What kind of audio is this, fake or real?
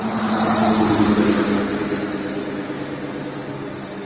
real